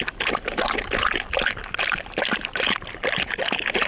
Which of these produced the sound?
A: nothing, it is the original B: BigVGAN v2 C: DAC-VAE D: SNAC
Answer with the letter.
A